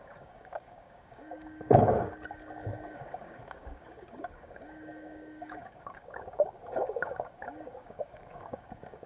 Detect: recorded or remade remade